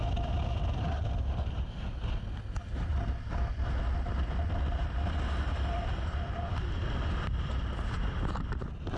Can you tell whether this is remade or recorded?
recorded